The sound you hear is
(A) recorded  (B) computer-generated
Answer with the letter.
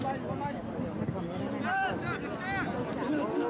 A